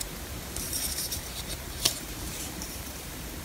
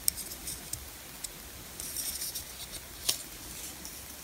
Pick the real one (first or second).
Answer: second